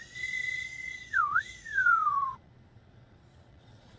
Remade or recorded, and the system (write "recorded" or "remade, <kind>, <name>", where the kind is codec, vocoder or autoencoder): remade, vocoder, Vocos